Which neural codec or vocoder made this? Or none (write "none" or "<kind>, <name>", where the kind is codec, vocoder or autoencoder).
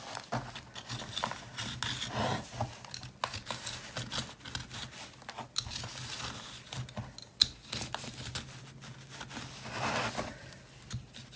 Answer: none